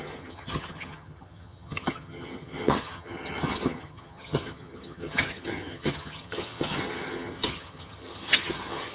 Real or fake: fake